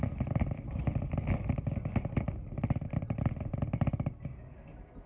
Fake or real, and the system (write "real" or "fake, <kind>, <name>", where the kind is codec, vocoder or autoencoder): real